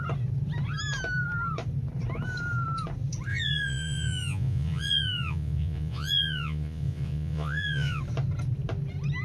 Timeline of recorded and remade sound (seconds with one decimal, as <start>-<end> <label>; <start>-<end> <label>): 0.0-3.3 recorded; 3.3-8.0 remade; 8.0-9.2 recorded